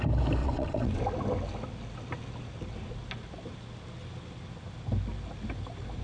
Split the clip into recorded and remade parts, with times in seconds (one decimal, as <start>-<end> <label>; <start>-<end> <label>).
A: 0.0-0.4 recorded; 0.4-1.0 remade; 1.0-6.0 recorded